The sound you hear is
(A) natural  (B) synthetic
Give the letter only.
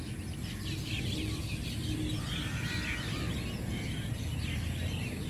A